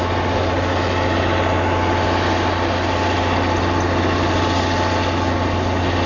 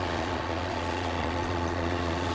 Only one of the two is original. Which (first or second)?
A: first